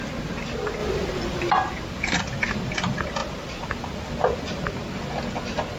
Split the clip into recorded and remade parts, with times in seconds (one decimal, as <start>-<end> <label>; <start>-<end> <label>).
0.0-5.8 recorded